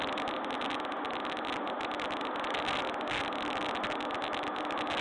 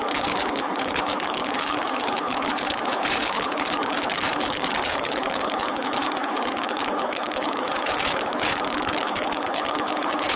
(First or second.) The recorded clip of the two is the first